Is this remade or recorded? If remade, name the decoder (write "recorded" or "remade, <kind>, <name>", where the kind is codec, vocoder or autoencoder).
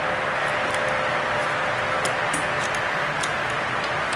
recorded